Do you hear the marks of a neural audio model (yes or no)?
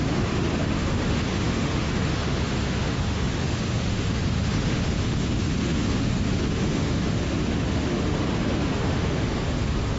yes